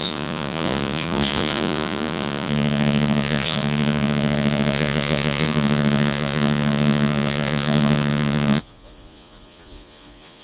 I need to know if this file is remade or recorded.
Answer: remade